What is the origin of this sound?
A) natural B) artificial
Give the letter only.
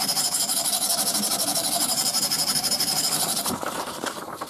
B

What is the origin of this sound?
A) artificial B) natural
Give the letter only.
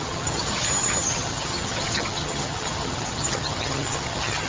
A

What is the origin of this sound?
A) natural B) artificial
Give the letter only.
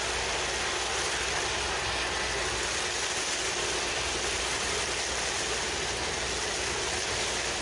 A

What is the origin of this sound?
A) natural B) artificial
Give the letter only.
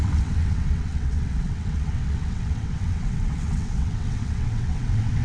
B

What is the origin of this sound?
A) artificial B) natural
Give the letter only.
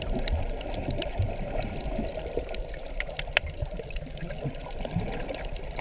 B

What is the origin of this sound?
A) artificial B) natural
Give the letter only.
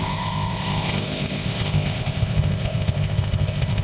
A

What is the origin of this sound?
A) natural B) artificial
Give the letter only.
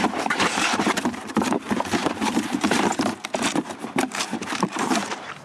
B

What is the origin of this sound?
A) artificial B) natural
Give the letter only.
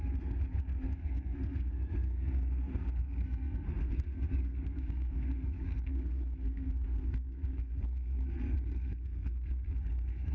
A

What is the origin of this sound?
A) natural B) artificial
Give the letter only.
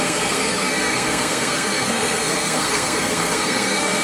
B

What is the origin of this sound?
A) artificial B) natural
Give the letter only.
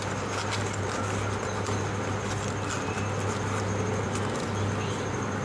B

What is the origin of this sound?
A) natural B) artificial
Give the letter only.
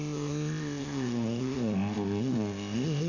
B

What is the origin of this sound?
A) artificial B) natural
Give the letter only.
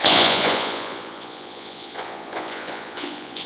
A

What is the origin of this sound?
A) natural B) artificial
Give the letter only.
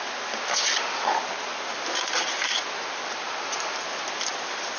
A